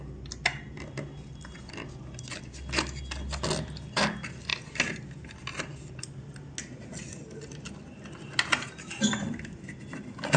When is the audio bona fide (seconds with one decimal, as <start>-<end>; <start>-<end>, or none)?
0.0-10.4